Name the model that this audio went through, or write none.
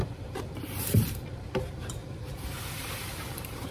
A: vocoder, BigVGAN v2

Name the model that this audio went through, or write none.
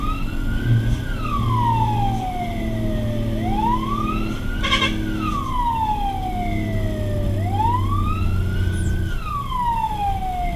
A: none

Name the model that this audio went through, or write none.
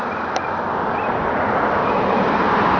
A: none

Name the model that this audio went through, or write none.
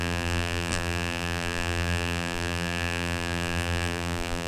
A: vocoder, BigVGAN v2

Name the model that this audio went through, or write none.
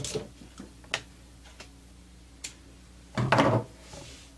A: none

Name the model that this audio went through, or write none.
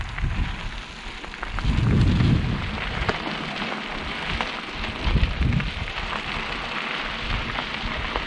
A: none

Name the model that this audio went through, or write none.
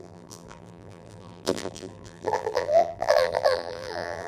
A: vocoder, BigVGAN v2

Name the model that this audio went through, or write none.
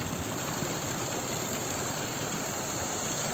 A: vocoder, BigVGAN v2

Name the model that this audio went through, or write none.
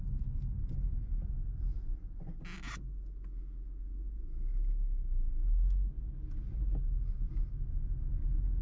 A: none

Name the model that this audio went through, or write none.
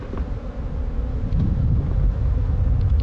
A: none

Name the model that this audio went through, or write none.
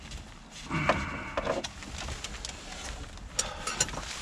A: none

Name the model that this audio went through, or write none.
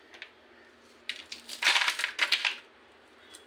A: none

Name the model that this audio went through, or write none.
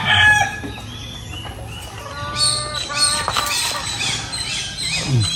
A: none